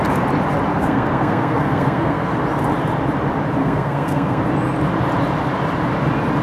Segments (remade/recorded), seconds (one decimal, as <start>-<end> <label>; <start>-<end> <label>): 0.0-0.7 recorded; 0.7-2.4 remade; 2.4-3.6 recorded; 3.6-4.4 remade; 4.4-6.4 recorded